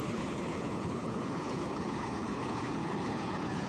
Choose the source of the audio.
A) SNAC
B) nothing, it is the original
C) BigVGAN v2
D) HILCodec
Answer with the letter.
D